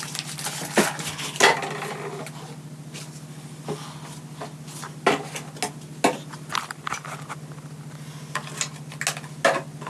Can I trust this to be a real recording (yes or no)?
yes